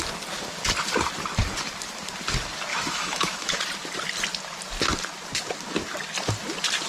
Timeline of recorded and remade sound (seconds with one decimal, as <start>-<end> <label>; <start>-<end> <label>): 0.0-2.7 recorded; 2.7-3.6 remade; 3.6-6.9 recorded